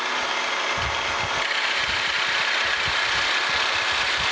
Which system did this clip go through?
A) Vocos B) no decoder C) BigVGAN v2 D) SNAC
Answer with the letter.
B